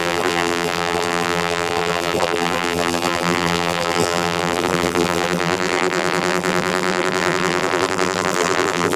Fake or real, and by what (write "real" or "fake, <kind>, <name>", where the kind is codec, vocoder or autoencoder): fake, vocoder, BigVGAN v2